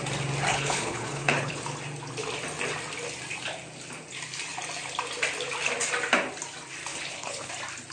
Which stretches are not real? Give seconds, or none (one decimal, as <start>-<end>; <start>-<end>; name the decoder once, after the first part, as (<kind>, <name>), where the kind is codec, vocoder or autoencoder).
0.5-1.6 (codec, HILCodec); 6.9-7.5